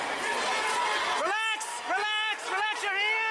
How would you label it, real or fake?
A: real